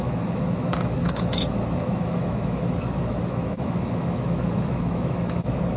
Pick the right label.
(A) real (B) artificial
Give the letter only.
B